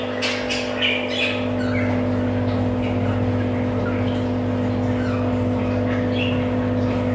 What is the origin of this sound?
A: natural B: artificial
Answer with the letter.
A